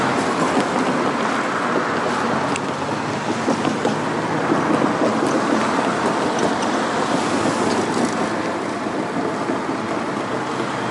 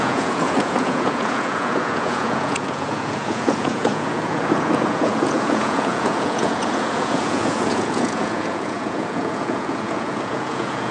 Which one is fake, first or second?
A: second